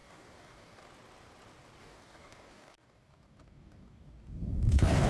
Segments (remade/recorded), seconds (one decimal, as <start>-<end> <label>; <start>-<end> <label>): 0.0-0.8 remade; 0.8-1.8 recorded; 1.8-5.1 remade